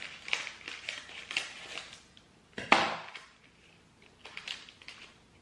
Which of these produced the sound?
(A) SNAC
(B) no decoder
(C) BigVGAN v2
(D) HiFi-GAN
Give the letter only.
B